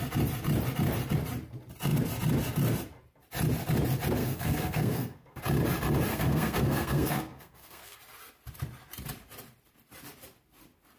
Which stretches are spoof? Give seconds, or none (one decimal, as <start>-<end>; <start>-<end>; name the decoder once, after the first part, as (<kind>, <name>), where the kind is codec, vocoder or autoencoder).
4.2-5.4 (codec, SNAC); 6.1-8.0